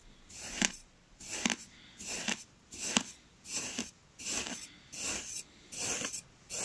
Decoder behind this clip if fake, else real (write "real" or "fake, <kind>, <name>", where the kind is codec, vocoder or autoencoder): real